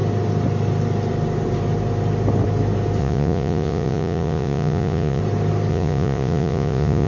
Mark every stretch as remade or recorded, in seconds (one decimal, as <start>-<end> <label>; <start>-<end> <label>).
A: 0.0-3.0 recorded; 3.0-5.2 remade; 5.2-5.7 recorded; 5.7-7.1 remade